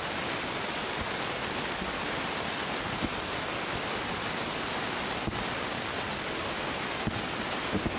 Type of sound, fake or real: real